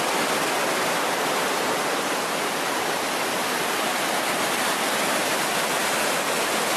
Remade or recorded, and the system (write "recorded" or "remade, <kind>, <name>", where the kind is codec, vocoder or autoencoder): recorded